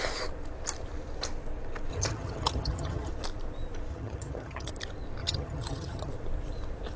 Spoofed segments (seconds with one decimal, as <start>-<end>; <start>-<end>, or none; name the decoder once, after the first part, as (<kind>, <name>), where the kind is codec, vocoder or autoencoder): 1.9-3.1 (vocoder, HiFi-GAN); 3.9-4.7; 5.2-6.1